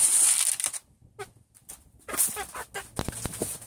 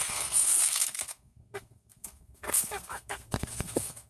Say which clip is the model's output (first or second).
second